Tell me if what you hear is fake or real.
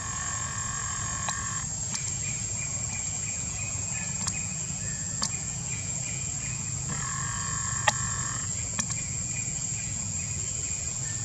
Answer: fake